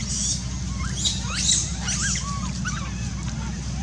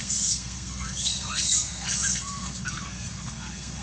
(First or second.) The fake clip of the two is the second